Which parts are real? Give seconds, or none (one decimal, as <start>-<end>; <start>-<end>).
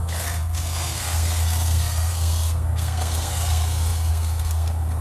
none